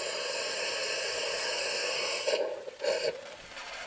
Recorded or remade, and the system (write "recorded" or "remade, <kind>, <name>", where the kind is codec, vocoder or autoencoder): recorded